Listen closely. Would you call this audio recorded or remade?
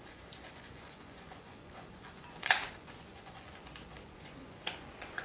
remade